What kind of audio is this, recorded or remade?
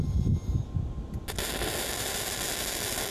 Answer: recorded